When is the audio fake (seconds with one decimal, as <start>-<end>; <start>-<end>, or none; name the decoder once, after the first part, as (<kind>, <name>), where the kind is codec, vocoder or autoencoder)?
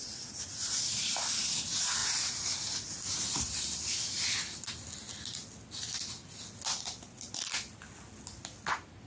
none